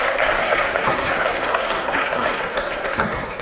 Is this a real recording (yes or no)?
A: no